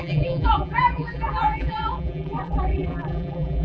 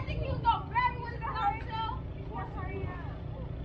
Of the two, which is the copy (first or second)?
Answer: first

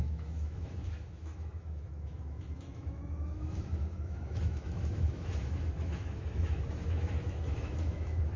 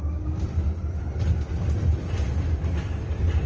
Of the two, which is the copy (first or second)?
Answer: first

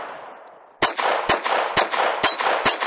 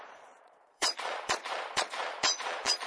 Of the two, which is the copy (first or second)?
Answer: second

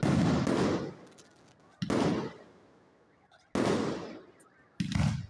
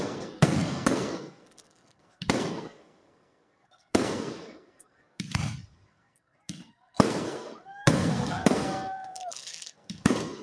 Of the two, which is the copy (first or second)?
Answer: second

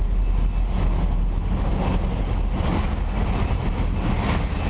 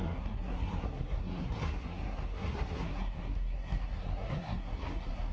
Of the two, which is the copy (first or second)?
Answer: second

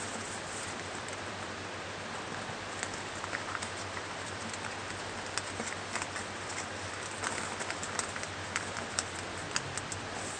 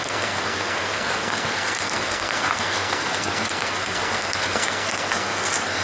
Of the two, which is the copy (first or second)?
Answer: second